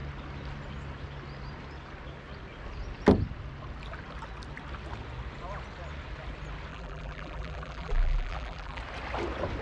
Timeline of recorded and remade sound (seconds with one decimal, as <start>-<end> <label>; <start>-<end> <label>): 0.0-6.7 recorded; 6.7-8.8 remade; 8.8-9.6 recorded